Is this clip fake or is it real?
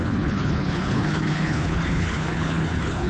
fake